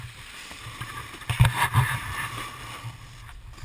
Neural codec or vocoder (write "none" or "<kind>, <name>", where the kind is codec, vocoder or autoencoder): none